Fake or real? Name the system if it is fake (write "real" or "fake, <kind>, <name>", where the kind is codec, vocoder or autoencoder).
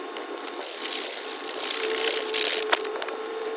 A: fake, vocoder, BigVGAN v2